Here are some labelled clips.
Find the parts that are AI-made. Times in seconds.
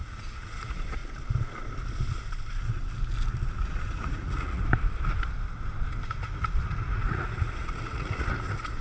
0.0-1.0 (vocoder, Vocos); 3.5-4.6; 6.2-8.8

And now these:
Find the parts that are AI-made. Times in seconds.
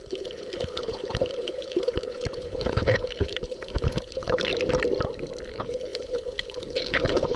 0.0-4.5 (codec, HILCodec); 5.5-7.4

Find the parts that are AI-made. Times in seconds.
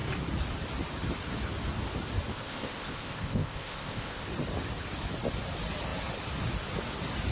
2.3-4.3 (codec, ZipCodec)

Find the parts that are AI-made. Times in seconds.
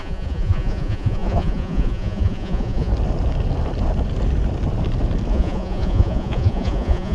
0.0-2.9 (vocoder, Vocos); 5.3-7.1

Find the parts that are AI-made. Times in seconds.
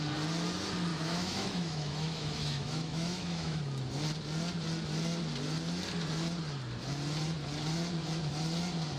0.9-3.6 (autoencoder, DAC-VAE)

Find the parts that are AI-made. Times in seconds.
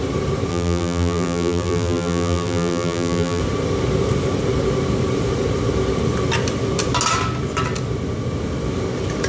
0.5-3.4 (vocoder, BigVGAN v2)